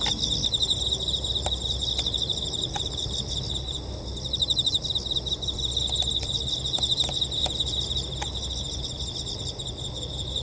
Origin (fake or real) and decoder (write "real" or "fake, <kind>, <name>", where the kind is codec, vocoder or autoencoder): real